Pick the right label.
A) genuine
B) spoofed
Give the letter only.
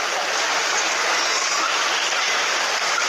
A